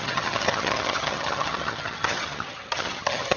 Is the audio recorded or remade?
remade